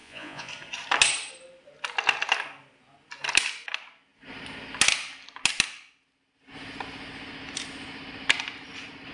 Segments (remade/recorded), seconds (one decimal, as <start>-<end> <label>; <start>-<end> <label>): 0.0-0.5 remade; 0.5-9.1 recorded